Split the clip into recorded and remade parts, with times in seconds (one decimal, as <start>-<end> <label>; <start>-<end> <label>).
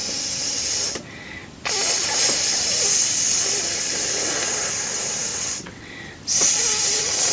0.0-5.3 recorded; 5.3-5.9 remade; 5.9-7.3 recorded